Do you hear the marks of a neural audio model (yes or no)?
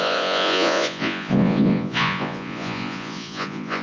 yes